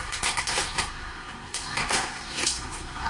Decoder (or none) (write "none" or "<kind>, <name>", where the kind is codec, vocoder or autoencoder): codec, SNAC